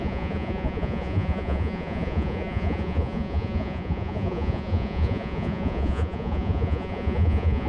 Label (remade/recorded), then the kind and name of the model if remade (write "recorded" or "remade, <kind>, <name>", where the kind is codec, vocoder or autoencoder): remade, vocoder, Vocos